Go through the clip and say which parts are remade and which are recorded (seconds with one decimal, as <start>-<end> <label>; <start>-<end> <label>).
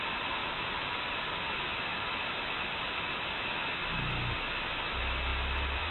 0.0-0.4 recorded; 0.4-1.1 remade; 1.1-1.9 recorded; 1.9-3.3 remade; 3.3-5.9 recorded